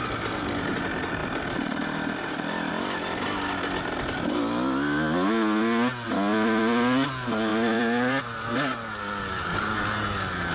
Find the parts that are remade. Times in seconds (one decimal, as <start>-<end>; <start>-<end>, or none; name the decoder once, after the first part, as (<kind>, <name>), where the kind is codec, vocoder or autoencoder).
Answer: 1.2-2.7 (vocoder, BigVGAN v2); 7.5-8.2